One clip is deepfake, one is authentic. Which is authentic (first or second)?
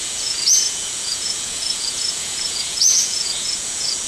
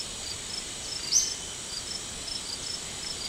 second